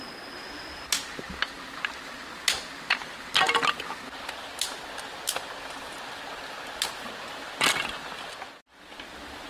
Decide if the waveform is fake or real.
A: real